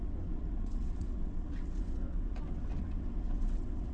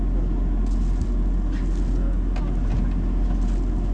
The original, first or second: second